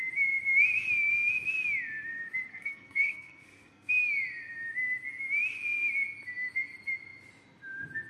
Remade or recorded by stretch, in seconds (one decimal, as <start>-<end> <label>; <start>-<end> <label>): 0.0-2.5 recorded; 2.5-3.9 remade; 3.9-8.1 recorded

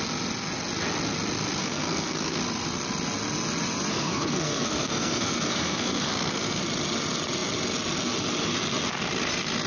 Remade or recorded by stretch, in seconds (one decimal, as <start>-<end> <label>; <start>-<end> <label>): 0.0-1.6 recorded; 1.6-2.4 remade; 2.4-3.9 recorded; 3.9-6.6 remade; 6.6-9.7 recorded

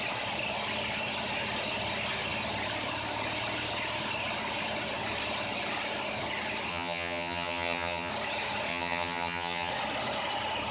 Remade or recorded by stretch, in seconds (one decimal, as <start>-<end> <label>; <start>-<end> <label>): 0.0-6.7 recorded; 6.7-8.1 remade; 8.1-8.7 recorded; 8.7-9.7 remade; 9.7-10.7 recorded

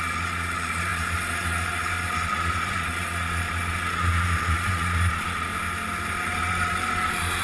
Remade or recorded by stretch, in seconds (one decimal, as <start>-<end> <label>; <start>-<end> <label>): 0.0-5.5 remade; 5.5-6.1 recorded; 6.1-7.4 remade

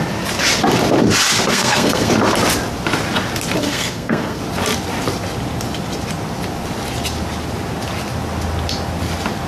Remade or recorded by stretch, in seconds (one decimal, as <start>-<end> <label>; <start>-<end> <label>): 0.0-1.5 recorded; 1.5-2.1 remade; 2.1-3.6 recorded; 3.6-4.4 remade; 4.4-9.5 recorded

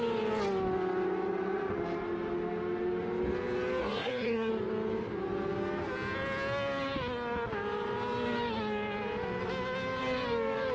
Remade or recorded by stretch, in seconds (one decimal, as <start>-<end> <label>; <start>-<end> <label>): 0.0-3.8 recorded; 3.8-4.5 remade; 4.5-10.7 recorded

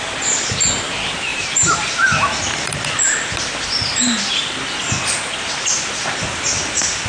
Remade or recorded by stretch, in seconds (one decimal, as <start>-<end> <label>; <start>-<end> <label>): 0.0-1.3 recorded; 1.3-1.9 remade; 1.9-7.1 recorded

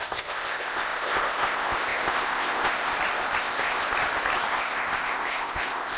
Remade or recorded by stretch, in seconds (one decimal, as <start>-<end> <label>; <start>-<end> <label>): 0.0-2.9 remade; 2.9-3.4 recorded; 3.4-3.8 remade; 3.8-4.5 recorded; 4.5-6.0 remade